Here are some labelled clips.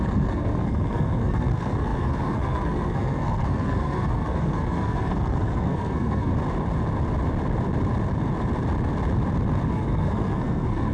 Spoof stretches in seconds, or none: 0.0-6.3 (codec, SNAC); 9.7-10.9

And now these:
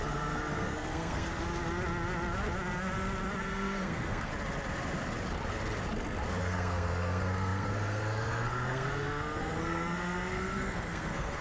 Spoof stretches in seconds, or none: 0.0-1.3 (codec, SNAC); 3.4-4.3; 6.4-11.4